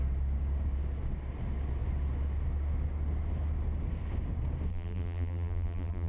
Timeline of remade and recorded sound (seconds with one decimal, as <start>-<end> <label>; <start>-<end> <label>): 0.0-4.7 recorded; 4.7-6.1 remade